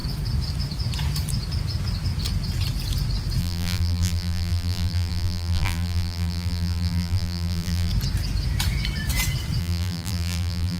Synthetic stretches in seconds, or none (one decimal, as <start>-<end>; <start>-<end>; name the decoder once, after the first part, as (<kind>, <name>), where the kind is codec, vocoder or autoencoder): 3.4-7.9 (vocoder, BigVGAN v2); 9.6-10.8